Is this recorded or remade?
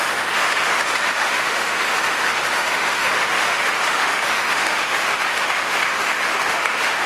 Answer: remade